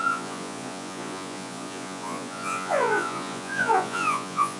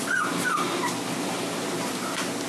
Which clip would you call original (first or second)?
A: second